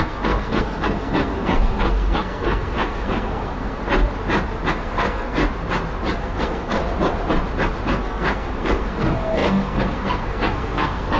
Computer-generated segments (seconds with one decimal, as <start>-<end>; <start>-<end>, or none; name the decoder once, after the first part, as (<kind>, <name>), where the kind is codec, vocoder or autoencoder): 0.0-3.8 (codec, SNAC); 4.7-5.4; 6.2-6.8; 7.9-11.2